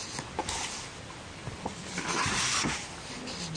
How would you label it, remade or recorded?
recorded